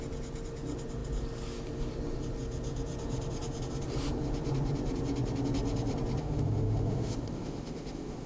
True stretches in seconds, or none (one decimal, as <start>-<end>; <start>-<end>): 0.0-6.2